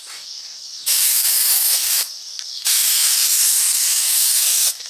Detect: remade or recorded remade